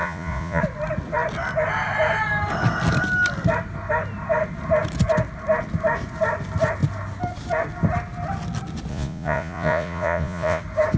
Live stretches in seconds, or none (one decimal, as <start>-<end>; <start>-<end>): 0.6-8.9; 10.6-11.0